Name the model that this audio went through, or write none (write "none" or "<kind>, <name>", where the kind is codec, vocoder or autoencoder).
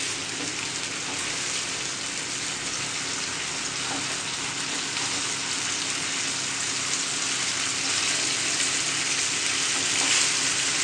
none